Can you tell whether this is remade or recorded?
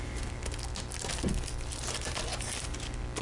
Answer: recorded